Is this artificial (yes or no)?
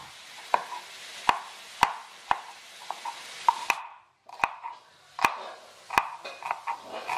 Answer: no